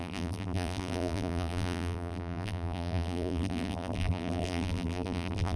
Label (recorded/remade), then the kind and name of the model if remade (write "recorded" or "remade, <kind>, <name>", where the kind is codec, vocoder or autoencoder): remade, vocoder, BigVGAN v2